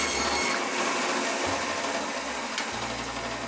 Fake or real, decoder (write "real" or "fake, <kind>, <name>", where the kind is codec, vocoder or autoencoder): real